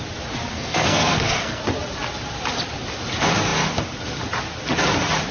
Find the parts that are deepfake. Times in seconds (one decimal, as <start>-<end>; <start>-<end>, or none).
0.5-1.6